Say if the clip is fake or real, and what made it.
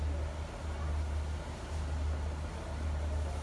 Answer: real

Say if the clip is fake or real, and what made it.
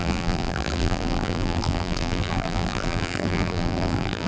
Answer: fake, vocoder, BigVGAN v2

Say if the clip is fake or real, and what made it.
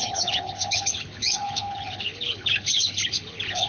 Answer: fake, codec, HILCodec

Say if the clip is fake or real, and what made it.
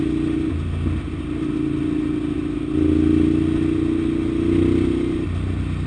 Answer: real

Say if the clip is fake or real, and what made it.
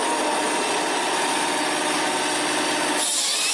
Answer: real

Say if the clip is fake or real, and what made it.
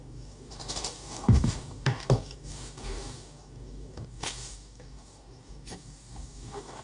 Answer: fake, codec, DAC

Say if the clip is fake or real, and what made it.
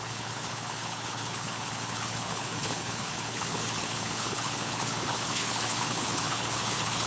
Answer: fake, codec, HILCodec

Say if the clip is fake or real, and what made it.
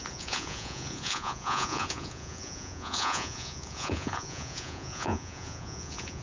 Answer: fake, vocoder, Vocos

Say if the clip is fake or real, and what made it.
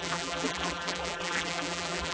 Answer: fake, vocoder, BigVGAN v2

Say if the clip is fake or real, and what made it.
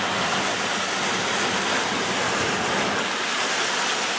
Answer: real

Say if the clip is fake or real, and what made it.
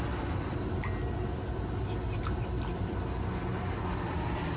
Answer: real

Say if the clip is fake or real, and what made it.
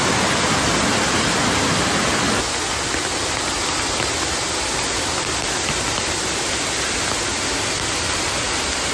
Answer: real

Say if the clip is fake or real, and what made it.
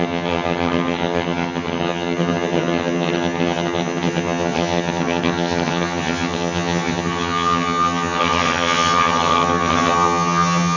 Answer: fake, vocoder, HiFi-GAN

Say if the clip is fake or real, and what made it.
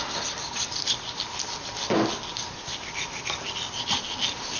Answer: real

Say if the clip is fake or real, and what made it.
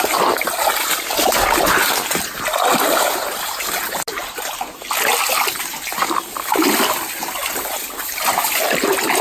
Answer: real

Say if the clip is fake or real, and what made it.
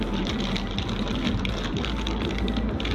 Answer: real